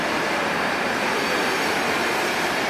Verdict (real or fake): fake